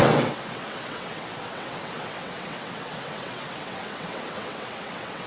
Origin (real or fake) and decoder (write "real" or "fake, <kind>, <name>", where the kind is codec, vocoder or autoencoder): fake, vocoder, WaveNeXt